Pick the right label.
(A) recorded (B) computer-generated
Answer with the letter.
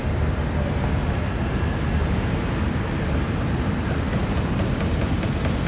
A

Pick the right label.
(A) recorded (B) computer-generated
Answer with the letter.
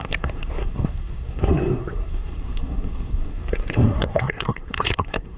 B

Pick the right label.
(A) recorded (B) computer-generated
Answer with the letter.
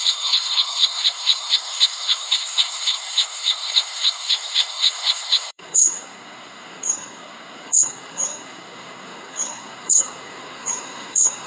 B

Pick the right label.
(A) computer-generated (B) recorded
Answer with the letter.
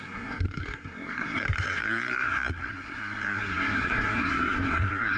A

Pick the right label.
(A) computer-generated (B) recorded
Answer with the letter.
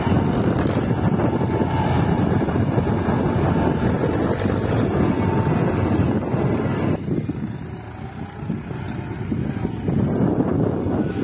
B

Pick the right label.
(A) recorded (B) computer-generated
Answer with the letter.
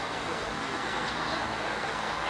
B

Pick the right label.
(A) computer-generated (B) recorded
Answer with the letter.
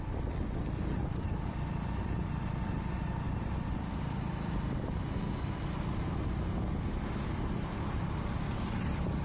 B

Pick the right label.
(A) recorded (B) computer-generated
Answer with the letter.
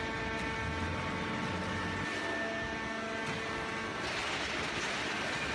A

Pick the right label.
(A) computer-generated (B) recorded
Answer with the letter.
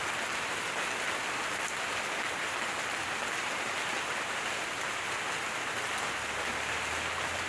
B